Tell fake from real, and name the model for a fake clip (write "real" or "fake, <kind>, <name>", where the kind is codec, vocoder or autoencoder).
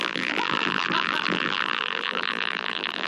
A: fake, vocoder, BigVGAN v2